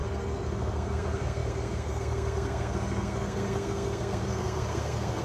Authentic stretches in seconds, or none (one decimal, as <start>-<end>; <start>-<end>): none